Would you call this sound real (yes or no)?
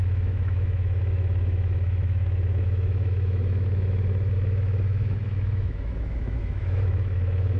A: no